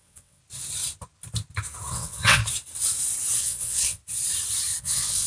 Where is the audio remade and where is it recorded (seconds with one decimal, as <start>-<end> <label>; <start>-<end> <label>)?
0.0-0.4 remade; 0.4-1.9 recorded; 1.9-2.4 remade; 2.4-3.4 recorded; 3.4-4.0 remade; 4.0-4.8 recorded; 4.8-5.3 remade